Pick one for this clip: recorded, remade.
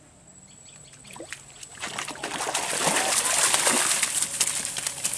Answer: recorded